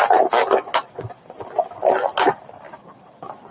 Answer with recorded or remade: recorded